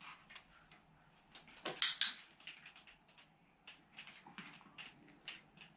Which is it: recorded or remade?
recorded